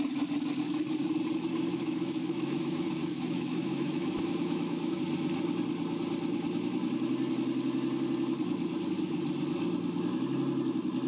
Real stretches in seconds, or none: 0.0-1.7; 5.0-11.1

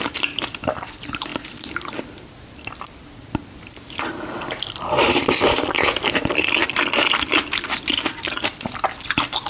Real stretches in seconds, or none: none

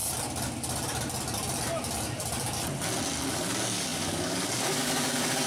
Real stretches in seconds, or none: 0.0-3.3

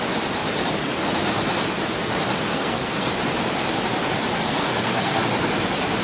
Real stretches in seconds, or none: 0.0-2.5; 3.1-4.4; 5.2-6.0

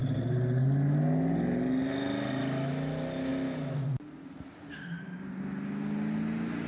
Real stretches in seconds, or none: 0.0-6.7

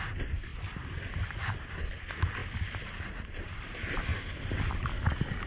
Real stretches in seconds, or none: 0.0-5.5